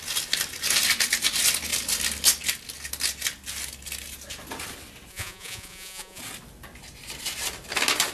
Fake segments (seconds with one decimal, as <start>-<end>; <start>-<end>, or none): 5.1-6.2